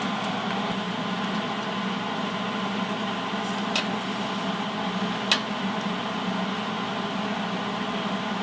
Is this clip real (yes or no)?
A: yes